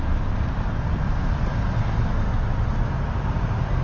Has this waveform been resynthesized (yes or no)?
no